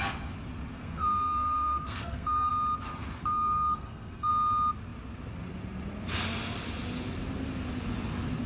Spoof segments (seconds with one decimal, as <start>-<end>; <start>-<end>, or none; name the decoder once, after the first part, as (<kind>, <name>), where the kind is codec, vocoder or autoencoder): 0.7-2.5 (codec, SNAC); 3.2-4.3